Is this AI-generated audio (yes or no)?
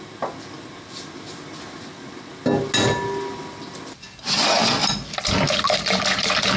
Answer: no